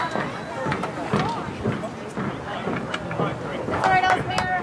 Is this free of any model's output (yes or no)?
yes